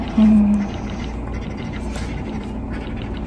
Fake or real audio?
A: real